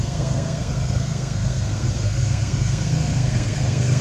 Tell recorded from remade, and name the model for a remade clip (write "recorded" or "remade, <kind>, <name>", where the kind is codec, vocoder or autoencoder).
remade, codec, SNAC